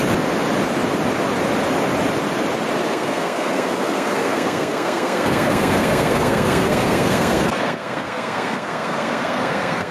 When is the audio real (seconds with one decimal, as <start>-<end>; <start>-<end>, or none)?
0.0-2.8